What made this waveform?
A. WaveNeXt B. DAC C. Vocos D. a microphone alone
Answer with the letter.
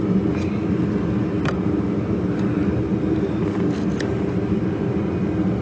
D